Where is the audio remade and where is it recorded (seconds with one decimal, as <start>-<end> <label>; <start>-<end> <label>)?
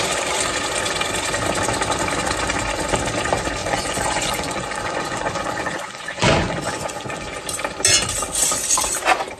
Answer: 0.0-3.6 recorded; 3.6-7.4 remade; 7.4-9.4 recorded